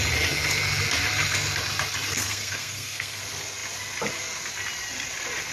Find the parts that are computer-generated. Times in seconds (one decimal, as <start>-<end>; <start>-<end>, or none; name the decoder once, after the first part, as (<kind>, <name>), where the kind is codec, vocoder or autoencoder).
2.1-3.2 (codec, SNAC)